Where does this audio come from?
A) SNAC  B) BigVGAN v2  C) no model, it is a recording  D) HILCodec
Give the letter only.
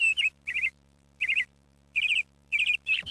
B